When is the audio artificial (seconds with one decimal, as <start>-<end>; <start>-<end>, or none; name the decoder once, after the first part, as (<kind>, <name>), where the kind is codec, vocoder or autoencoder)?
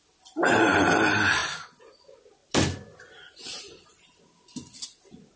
none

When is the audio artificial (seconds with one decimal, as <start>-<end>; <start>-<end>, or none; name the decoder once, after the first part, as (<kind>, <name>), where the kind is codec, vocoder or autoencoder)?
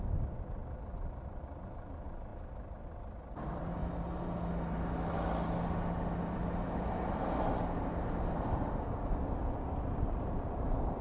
2.3-3.9 (vocoder, BigVGAN v2)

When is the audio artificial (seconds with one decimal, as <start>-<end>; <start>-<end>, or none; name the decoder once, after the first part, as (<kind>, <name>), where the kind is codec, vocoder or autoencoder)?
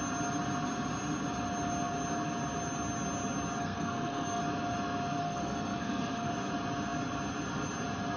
3.6-4.4 (codec, SNAC); 5.2-6.3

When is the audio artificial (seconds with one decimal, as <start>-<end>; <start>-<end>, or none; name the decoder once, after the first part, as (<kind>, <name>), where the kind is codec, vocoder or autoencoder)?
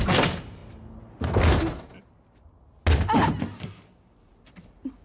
0.0-0.6 (vocoder, BigVGAN v2); 3.6-5.0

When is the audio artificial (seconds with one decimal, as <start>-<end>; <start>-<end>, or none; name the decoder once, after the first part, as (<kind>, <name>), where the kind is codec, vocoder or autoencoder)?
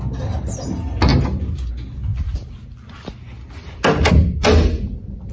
none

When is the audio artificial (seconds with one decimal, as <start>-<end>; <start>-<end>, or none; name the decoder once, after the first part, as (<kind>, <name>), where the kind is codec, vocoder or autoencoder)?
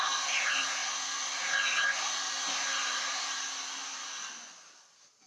none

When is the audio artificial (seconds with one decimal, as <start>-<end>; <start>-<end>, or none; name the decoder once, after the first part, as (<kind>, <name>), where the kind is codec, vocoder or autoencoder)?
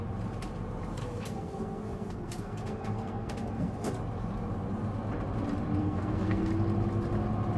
1.0-3.9 (codec, SNAC); 5.8-6.5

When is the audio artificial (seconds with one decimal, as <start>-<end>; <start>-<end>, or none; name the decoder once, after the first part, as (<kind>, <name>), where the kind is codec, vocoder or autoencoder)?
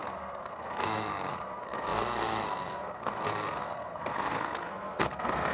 0.0-5.5 (codec, SNAC)